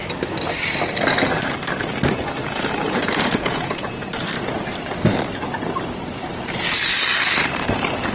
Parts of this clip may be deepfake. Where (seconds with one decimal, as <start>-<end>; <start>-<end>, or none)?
2.4-4.1